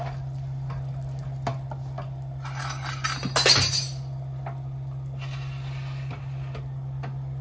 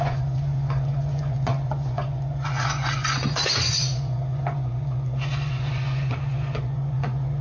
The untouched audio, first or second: first